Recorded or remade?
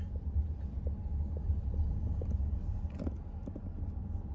recorded